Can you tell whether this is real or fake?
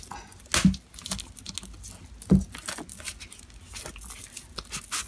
real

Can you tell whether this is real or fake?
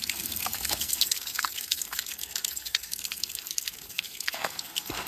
fake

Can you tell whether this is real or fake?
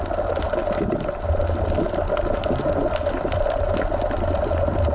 real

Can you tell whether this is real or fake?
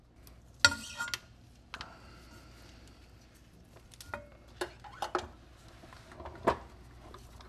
real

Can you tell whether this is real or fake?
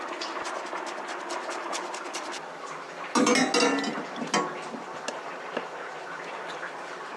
real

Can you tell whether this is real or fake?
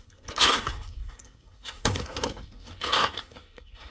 fake